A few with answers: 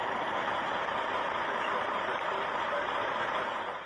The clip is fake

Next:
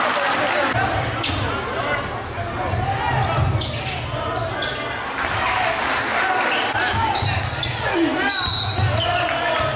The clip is real